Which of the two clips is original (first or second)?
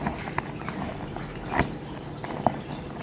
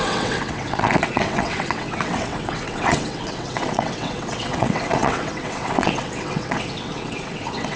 first